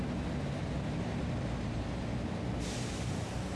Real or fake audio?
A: real